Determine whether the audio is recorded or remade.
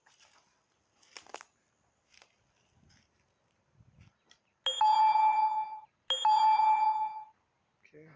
recorded